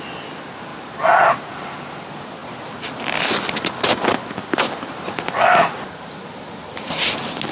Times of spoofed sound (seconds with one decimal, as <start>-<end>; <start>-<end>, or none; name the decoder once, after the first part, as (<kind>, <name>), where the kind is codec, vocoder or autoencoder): none